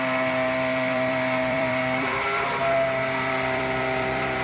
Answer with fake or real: fake